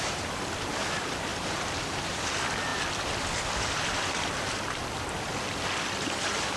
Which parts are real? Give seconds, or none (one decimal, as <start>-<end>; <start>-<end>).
4.8-5.5